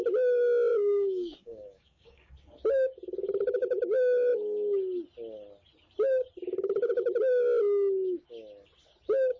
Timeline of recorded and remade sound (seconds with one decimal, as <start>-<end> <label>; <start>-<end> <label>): 0.0-0.7 recorded; 0.7-2.3 remade; 2.3-9.4 recorded